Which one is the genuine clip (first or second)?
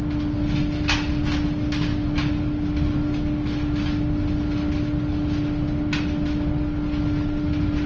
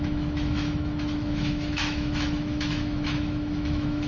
first